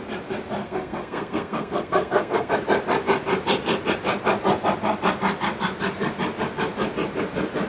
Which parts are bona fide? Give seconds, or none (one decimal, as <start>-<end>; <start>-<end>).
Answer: 0.0-0.6; 2.5-7.7